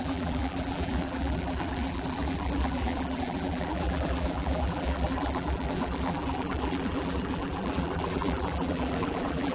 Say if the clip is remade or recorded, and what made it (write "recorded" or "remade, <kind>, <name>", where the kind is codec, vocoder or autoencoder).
remade, vocoder, BigVGAN v2